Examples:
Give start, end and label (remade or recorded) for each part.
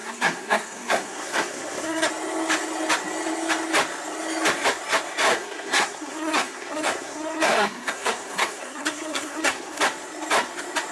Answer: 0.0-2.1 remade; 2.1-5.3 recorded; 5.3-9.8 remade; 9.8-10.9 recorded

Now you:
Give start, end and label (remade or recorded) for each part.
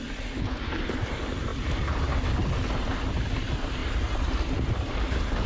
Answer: 0.0-5.5 recorded